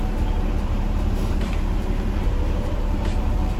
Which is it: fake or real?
fake